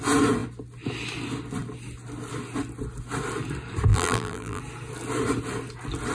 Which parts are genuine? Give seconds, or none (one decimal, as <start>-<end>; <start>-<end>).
0.0-3.9; 4.6-6.1